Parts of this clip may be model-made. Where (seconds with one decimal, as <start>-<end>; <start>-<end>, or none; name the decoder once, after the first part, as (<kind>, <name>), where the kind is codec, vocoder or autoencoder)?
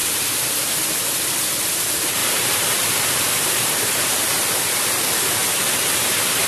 0.0-0.8 (vocoder, BigVGAN v2); 2.2-4.5